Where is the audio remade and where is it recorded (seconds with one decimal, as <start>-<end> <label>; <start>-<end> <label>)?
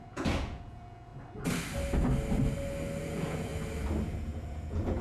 0.0-1.1 remade; 1.1-3.0 recorded; 3.0-3.5 remade; 3.5-4.1 recorded; 4.1-5.0 remade